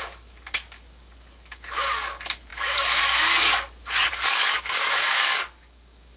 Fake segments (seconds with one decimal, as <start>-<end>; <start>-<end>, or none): 0.0-6.2